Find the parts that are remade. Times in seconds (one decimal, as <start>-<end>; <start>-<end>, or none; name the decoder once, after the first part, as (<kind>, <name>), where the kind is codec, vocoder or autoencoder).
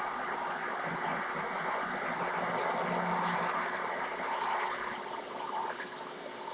1.1-2.0 (vocoder, Vocos)